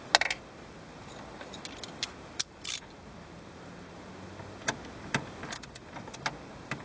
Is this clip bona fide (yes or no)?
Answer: yes